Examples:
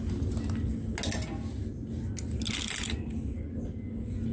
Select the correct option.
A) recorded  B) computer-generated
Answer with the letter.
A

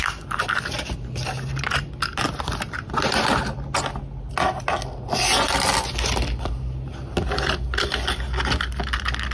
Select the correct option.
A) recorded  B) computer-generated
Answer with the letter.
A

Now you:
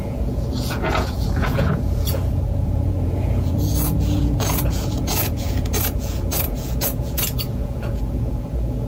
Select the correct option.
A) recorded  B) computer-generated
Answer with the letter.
B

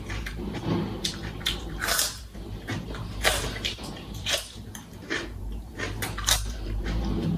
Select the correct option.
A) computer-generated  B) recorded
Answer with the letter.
A